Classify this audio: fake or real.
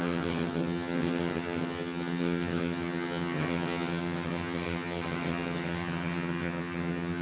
fake